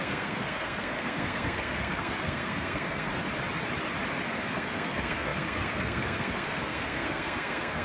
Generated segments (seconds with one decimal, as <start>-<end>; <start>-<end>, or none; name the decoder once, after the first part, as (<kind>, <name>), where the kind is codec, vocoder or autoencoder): 0.0-3.1 (codec, SNAC); 4.5-7.8